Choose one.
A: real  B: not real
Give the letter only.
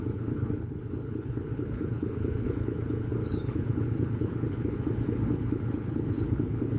B